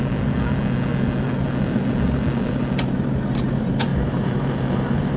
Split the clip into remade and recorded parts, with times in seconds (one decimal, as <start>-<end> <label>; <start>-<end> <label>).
0.0-3.9 recorded; 3.9-5.2 remade

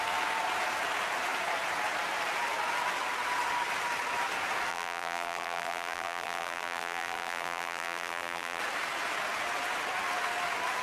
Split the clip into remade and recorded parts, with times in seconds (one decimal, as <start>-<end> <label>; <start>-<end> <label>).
0.0-4.7 recorded; 4.7-8.6 remade; 8.6-10.8 recorded

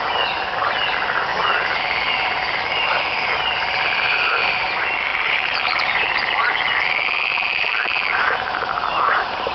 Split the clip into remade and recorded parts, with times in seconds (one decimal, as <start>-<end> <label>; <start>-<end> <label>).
0.0-5.1 recorded; 5.1-6.2 remade; 6.2-7.3 recorded; 7.3-9.5 remade

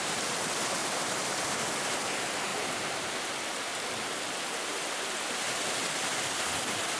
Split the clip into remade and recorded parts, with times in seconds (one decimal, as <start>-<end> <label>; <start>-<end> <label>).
0.0-7.0 recorded

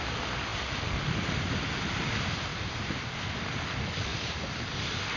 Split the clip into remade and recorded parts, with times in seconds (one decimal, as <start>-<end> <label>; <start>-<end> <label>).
0.0-2.5 recorded; 2.5-3.2 remade; 3.2-4.1 recorded; 4.1-4.7 remade; 4.7-5.2 recorded

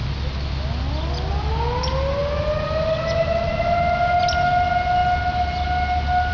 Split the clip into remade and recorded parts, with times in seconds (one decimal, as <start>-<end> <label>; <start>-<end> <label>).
0.0-6.3 recorded

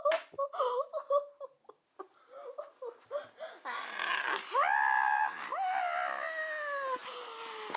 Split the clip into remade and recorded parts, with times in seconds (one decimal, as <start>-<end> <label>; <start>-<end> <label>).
0.0-7.8 recorded